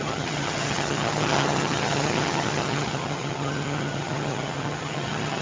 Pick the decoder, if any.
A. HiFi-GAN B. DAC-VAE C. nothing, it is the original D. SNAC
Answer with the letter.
A